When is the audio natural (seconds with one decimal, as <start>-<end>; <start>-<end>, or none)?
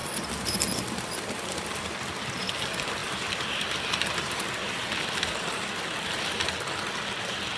1.9-3.0; 5.2-7.6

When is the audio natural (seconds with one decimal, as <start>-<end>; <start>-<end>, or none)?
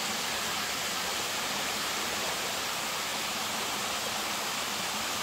0.0-1.1; 2.5-5.2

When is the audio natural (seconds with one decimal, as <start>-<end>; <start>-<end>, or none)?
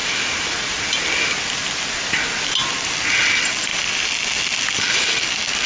0.8-5.7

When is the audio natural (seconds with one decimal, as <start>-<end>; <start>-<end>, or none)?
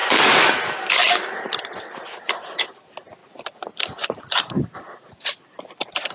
0.0-1.4; 3.2-4.5